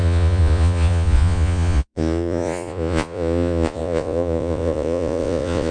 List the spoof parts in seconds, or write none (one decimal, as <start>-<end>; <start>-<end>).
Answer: 0.0-5.7